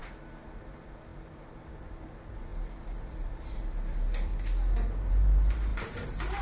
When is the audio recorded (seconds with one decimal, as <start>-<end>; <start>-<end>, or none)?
4.3-5.1